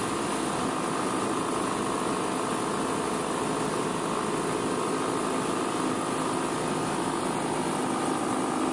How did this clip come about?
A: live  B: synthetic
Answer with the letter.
A